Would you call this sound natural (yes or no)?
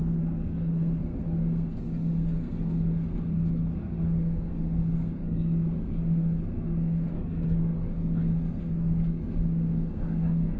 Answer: no